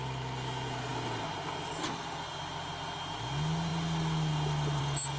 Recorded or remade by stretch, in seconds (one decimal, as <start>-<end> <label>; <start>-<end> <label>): 0.0-5.2 recorded

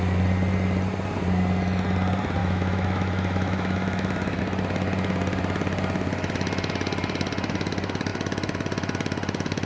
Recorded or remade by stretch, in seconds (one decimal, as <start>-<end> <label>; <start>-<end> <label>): 0.0-2.4 recorded; 2.4-4.4 remade; 4.4-9.7 recorded

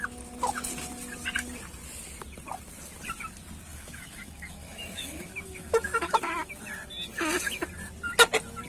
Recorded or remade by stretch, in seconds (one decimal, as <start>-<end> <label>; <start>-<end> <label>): 0.0-3.7 recorded; 3.7-6.5 remade; 6.5-8.7 recorded

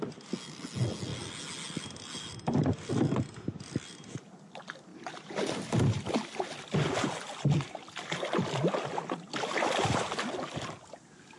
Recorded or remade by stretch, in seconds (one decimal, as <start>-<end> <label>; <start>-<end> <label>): 0.0-11.4 recorded

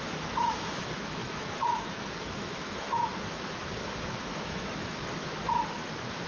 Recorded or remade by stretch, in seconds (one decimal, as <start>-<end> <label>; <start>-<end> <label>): 0.0-3.7 remade; 3.7-4.3 recorded; 4.3-6.3 remade

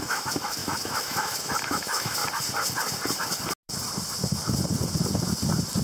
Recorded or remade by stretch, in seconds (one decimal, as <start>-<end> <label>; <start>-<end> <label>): 0.0-2.2 remade; 2.2-5.8 recorded

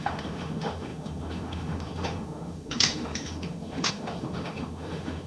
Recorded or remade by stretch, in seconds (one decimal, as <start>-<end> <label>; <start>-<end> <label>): 0.0-5.3 remade